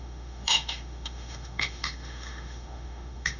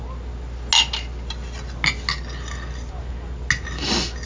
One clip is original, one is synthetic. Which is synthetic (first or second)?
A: first